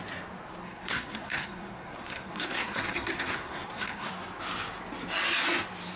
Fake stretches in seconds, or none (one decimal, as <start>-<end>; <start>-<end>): 0.6-4.1